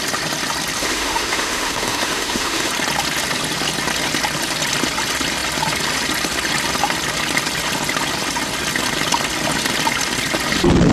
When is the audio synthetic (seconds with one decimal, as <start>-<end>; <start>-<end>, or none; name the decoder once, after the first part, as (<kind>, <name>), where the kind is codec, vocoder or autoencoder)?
0.8-2.7 (autoencoder, DAC-VAE)